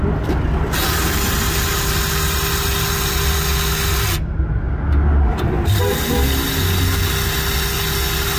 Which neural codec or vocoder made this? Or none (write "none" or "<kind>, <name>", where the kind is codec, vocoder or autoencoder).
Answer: none